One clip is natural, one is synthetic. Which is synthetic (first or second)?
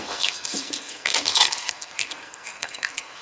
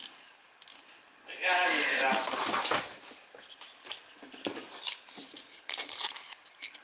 first